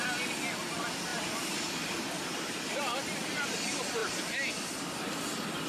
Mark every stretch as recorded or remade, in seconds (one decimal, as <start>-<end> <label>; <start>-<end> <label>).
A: 0.0-1.1 recorded; 1.1-2.8 remade; 2.8-5.7 recorded